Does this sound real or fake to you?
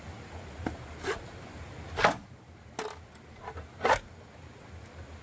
real